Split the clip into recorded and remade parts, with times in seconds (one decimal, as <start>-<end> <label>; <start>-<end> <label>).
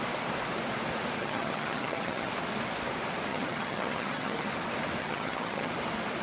0.0-1.2 recorded; 1.2-2.3 remade; 2.3-3.3 recorded; 3.3-4.5 remade; 4.5-5.0 recorded; 5.0-5.7 remade; 5.7-6.2 recorded